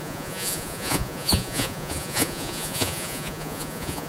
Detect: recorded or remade remade